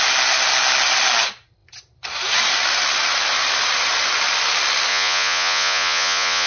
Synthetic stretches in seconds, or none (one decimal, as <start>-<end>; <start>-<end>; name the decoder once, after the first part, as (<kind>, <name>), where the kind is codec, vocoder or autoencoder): 4.9-6.5 (vocoder, Vocos)